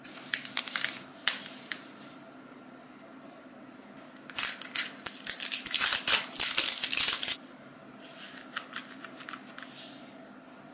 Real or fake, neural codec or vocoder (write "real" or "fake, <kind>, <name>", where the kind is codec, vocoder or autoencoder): real